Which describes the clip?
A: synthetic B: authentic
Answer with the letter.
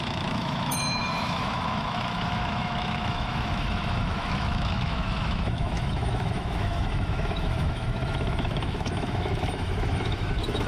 A